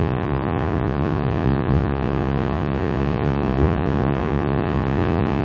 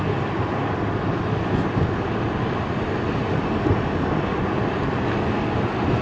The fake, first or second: first